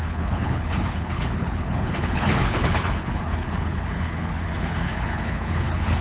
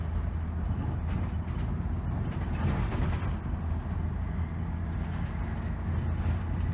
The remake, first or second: first